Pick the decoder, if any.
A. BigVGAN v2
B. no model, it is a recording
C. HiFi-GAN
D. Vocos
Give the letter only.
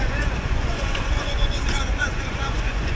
D